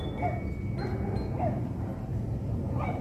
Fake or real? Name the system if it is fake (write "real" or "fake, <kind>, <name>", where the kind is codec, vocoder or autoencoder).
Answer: real